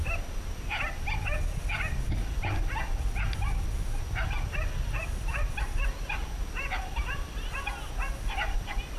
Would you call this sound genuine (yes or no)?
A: yes